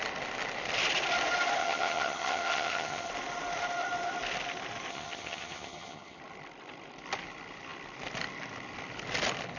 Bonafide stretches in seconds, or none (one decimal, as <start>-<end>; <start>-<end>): 0.0-1.6; 3.1-4.9; 6.2-9.6